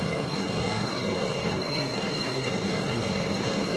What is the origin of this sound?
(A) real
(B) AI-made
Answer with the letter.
B